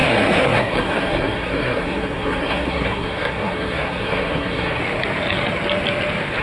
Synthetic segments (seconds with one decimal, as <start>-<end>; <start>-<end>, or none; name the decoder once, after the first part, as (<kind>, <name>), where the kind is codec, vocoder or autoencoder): 0.0-4.8 (codec, SNAC)